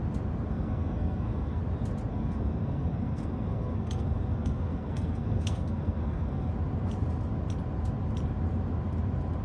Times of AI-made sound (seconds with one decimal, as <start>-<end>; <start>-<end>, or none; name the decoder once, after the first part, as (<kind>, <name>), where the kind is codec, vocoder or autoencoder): 0.5-1.6 (codec, SNAC); 2.1-6.5